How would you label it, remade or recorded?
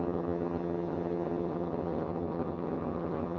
remade